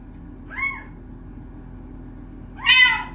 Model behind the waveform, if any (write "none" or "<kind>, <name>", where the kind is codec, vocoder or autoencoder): none